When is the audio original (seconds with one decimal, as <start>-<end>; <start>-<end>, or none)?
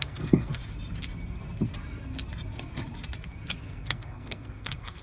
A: 0.6-3.6